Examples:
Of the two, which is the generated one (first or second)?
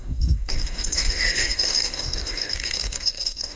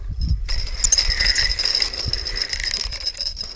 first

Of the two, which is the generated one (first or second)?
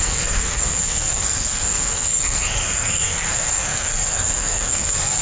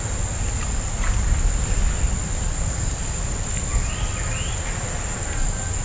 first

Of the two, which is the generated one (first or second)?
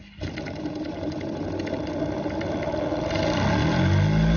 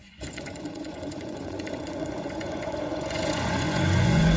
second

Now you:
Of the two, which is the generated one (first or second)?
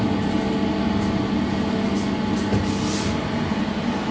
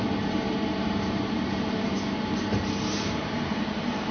second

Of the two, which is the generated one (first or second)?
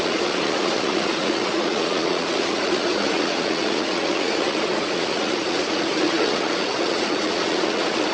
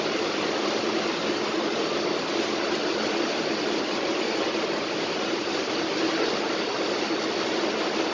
first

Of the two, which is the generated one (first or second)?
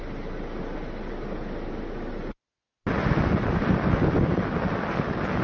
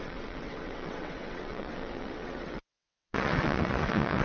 second